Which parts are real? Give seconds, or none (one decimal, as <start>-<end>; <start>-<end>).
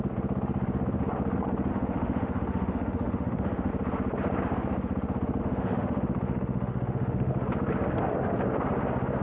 0.0-1.7; 3.7-5.4; 7.3-9.2